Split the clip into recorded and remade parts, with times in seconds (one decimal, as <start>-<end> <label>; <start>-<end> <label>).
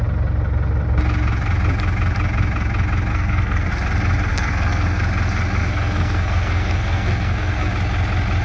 0.0-3.1 recorded; 3.1-3.7 remade; 3.7-4.3 recorded; 4.3-5.0 remade; 5.0-5.6 recorded; 5.6-7.7 remade; 7.7-8.4 recorded